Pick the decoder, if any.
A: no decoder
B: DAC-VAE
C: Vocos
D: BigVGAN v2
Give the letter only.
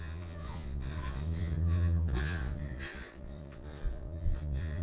C